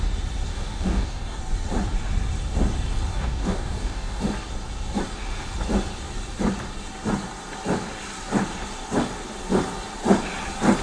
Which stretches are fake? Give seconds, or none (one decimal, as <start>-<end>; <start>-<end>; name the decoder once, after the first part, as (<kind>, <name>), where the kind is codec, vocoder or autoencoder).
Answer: 0.5-1.4 (codec, DAC); 3.1-4.2